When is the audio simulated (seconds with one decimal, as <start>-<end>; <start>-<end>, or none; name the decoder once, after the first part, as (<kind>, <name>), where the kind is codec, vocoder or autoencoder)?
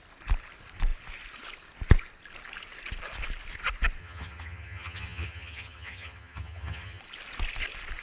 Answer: 4.0-7.0 (vocoder, HiFi-GAN)